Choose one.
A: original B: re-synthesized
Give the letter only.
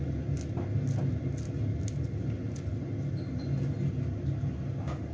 A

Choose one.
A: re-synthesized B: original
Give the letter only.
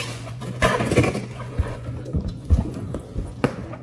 A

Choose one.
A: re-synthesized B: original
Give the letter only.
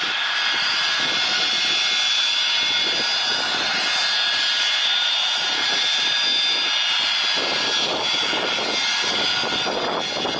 B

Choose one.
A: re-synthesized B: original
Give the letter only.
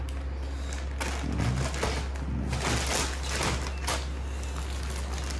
B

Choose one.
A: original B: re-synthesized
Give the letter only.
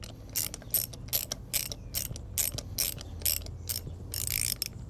A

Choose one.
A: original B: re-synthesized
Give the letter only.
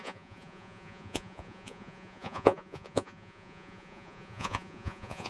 B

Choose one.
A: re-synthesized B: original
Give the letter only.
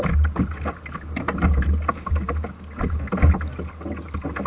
B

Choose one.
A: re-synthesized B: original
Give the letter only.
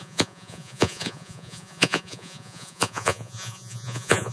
A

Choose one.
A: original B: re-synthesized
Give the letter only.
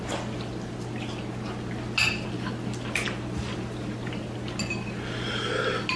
A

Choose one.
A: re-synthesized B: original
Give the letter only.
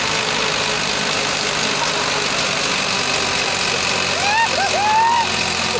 B